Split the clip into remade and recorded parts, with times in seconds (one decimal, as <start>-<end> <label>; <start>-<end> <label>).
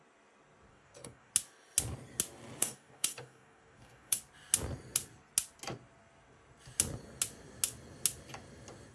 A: 0.0-0.7 recorded; 0.7-1.3 remade; 1.3-2.6 recorded; 2.6-4.2 remade; 4.2-8.9 recorded